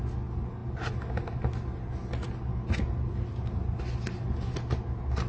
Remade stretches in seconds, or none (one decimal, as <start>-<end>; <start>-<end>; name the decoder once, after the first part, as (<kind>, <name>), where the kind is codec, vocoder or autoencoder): none